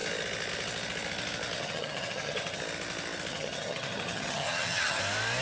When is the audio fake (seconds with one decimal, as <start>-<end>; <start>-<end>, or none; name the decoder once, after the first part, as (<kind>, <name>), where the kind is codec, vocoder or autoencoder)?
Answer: 1.6-2.6 (vocoder, HiFi-GAN); 3.3-5.0